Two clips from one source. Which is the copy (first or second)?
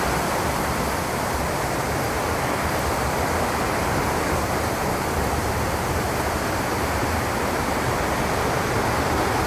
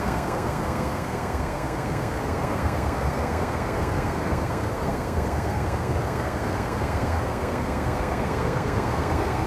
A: second